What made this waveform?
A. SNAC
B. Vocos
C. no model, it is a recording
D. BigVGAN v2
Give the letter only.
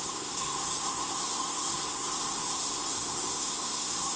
A